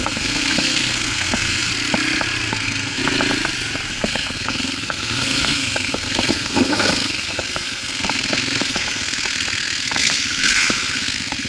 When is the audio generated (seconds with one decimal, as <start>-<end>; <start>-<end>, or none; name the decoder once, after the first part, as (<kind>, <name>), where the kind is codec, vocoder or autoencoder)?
0.0-1.7 (codec, SNAC); 2.5-3.0; 3.9-11.5